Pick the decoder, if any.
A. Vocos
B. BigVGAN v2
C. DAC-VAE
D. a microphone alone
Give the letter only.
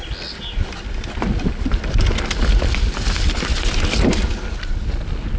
D